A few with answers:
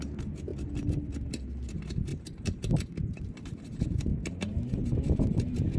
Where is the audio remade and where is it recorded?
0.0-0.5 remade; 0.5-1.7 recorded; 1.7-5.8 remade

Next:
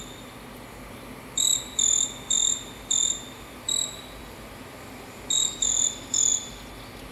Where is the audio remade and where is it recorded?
0.0-1.5 recorded; 1.5-5.3 remade; 5.3-7.1 recorded

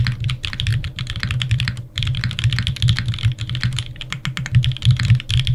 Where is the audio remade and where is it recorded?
0.0-0.7 recorded; 0.7-2.5 remade; 2.5-5.5 recorded

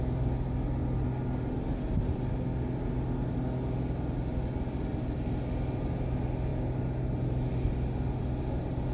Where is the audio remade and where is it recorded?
0.0-8.9 recorded

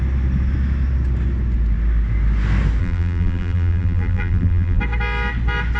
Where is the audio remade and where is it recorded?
0.0-2.8 recorded; 2.8-4.8 remade; 4.8-5.8 recorded

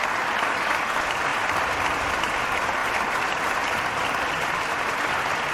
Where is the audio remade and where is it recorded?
0.0-1.3 recorded; 1.3-2.4 remade; 2.4-2.8 recorded; 2.8-5.0 remade; 5.0-5.5 recorded

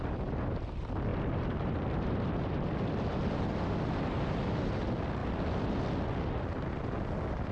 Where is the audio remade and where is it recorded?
0.0-7.5 recorded